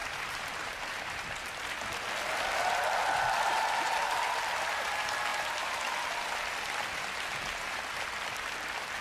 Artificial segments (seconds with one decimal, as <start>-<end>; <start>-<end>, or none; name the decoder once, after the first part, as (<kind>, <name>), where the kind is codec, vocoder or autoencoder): 0.0-1.6 (vocoder, BigVGAN v2)